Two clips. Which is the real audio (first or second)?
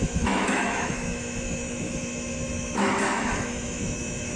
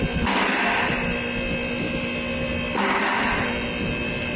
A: second